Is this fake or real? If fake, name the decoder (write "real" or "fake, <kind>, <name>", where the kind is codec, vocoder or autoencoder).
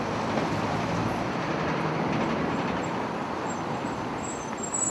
fake, vocoder, BigVGAN v2